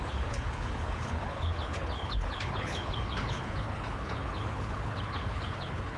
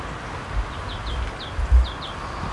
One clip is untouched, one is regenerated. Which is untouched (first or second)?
second